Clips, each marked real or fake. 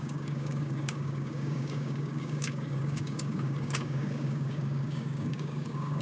fake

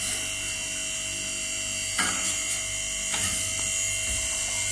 real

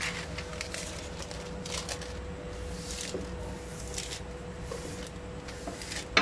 real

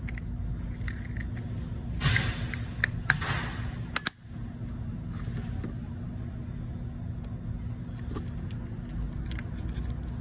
real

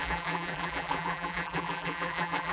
fake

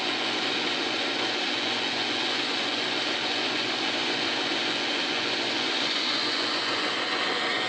fake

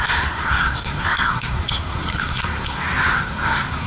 fake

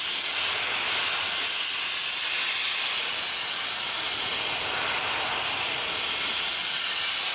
real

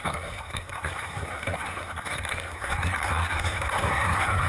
fake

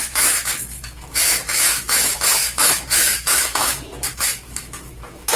fake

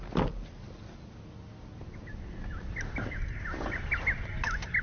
real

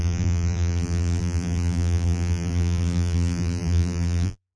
fake